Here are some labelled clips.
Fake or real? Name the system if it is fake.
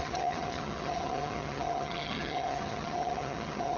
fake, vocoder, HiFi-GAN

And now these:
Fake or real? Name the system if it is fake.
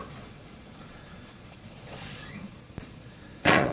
fake, vocoder, Vocos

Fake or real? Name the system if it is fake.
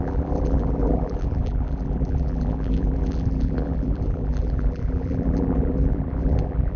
fake, vocoder, BigVGAN v2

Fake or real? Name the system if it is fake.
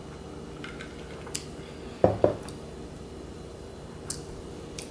real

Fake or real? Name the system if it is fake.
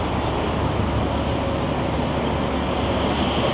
real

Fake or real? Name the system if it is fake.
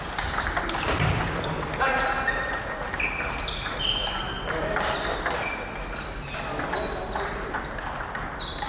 real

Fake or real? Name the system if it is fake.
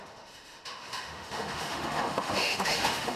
fake, autoencoder, DAC-VAE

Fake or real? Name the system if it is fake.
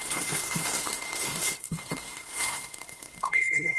fake, codec, SNAC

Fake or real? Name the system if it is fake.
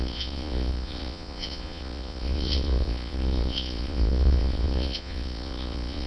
fake, vocoder, Vocos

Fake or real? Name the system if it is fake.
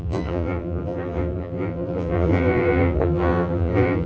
fake, vocoder, BigVGAN v2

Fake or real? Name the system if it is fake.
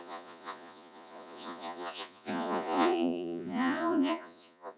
fake, vocoder, Vocos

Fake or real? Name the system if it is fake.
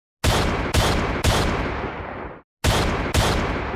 real